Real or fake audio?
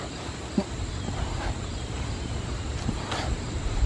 real